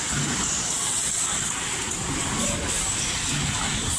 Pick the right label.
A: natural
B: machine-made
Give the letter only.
A